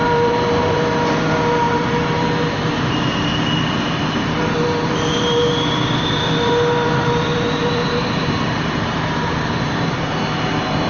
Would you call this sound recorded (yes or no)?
no